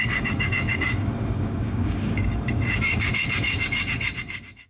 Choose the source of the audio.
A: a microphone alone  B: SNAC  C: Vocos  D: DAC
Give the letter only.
D